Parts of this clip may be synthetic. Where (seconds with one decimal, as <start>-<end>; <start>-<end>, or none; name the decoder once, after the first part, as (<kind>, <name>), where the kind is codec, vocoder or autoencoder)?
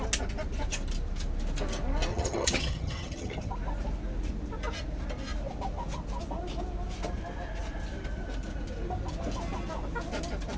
2.1-3.5 (vocoder, HiFi-GAN)